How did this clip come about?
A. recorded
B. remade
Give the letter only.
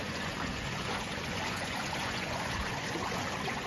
B